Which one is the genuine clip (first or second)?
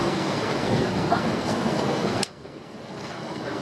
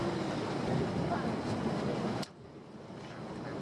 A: second